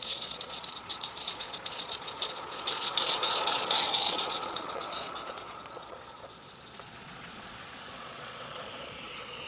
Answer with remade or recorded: remade